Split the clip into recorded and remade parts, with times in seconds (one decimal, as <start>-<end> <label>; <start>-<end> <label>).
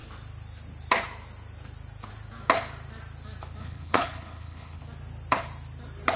0.0-3.6 recorded; 3.6-4.8 remade; 4.8-6.2 recorded